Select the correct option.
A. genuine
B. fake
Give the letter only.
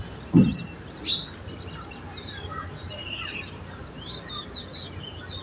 A